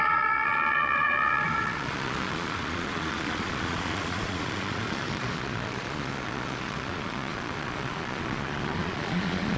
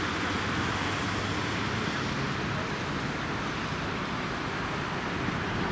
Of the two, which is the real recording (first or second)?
second